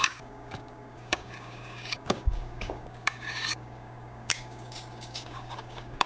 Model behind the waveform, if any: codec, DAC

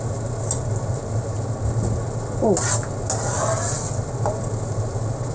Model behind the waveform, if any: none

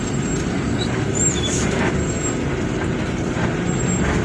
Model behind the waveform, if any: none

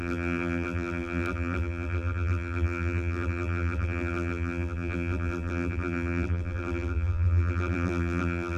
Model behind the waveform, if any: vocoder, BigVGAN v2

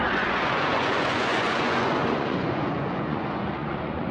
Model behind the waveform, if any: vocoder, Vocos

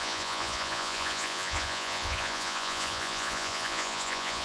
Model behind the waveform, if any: vocoder, Vocos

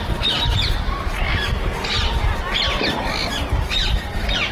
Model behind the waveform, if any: none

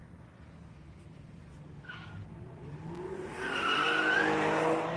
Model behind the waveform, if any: none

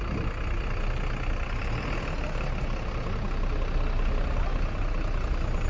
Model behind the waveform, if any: none